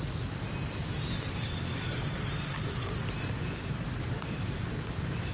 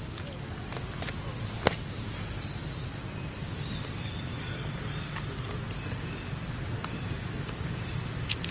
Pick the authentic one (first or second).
second